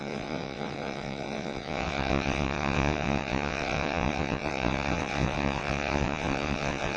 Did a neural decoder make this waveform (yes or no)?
yes